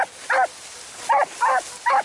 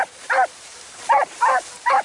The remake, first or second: second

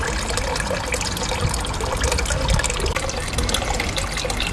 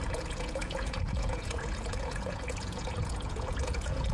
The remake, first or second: second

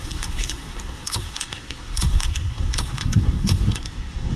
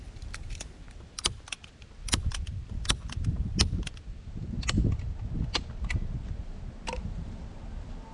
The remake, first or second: first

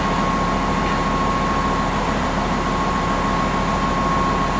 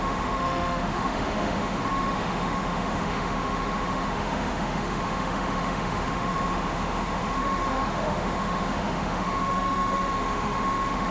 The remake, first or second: second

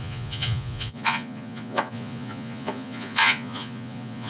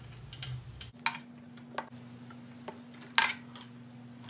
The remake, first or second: first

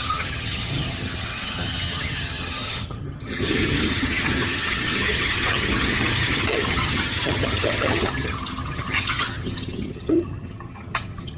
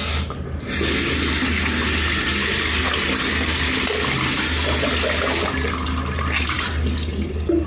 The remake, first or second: first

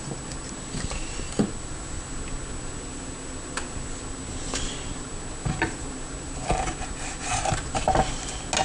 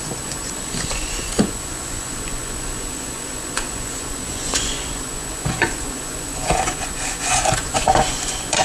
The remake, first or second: second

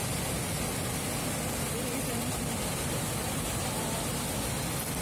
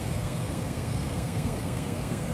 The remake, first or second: second